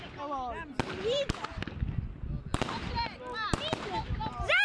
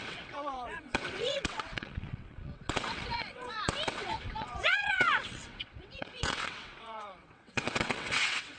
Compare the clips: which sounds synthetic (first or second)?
second